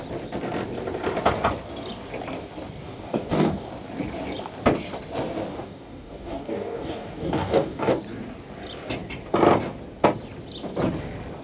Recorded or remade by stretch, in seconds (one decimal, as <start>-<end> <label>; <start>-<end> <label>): 0.0-2.8 recorded; 2.8-3.7 remade; 3.7-5.5 recorded; 5.5-8.0 remade; 8.0-11.4 recorded

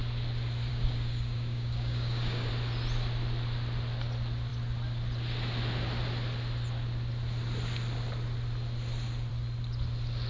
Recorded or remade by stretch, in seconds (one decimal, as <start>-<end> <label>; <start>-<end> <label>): 0.0-0.7 recorded; 0.7-2.5 remade; 2.5-10.3 recorded